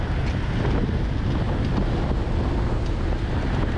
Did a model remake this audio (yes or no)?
no